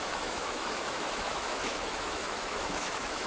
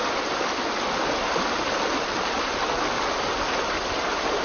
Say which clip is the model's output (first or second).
first